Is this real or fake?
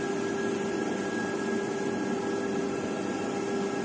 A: real